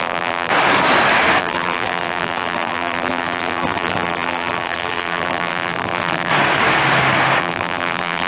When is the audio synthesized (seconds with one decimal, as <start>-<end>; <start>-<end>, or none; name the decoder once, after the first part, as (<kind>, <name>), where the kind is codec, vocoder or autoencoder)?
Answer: 0.0-0.5 (vocoder, BigVGAN v2); 1.4-6.3; 7.4-8.3